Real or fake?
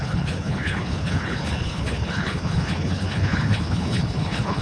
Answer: fake